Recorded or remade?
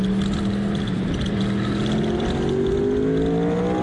recorded